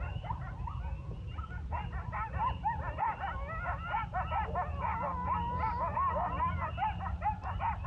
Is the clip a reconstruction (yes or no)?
no